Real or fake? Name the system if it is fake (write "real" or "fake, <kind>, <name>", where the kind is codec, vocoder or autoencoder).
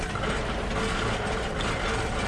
real